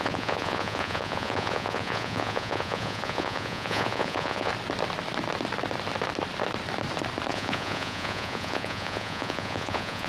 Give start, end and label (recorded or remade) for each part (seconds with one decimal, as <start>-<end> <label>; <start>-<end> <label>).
0.0-4.5 remade; 4.5-7.3 recorded; 7.3-10.1 remade